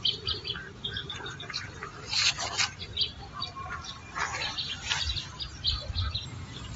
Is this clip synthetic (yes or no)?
no